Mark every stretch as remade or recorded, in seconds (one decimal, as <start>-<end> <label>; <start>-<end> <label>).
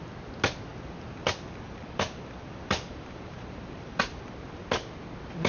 0.0-0.7 recorded; 0.7-4.0 remade; 4.0-5.5 recorded